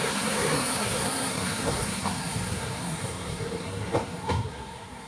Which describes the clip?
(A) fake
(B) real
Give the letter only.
A